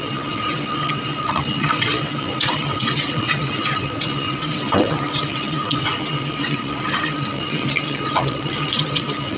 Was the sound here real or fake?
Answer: fake